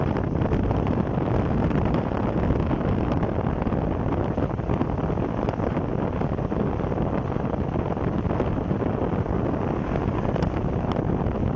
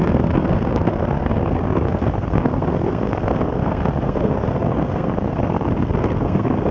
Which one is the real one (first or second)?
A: first